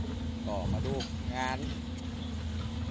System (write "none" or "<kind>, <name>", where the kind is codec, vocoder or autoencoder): none